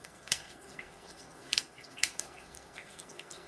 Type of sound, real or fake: fake